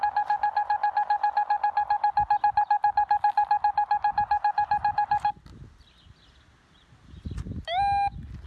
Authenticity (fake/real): real